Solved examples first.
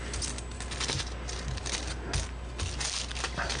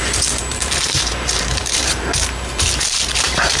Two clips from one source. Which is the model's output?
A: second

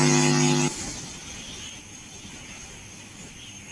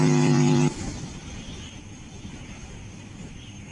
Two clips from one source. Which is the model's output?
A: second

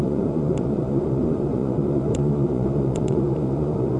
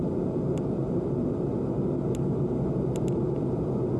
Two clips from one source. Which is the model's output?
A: first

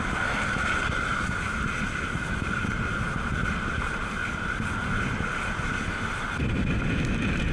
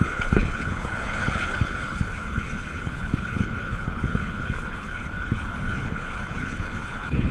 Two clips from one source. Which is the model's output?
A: second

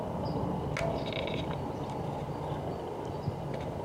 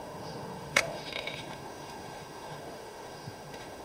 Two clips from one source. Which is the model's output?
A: second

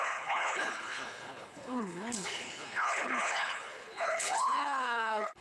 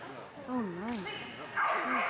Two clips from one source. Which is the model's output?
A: first